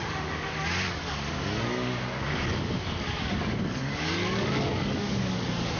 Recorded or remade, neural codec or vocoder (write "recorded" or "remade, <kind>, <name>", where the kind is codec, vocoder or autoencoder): remade, codec, DAC